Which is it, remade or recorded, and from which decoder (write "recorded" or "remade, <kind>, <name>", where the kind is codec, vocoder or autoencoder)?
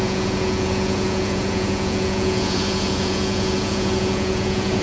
remade, vocoder, Vocos